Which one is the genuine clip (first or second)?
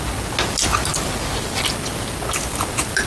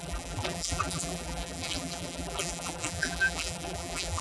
first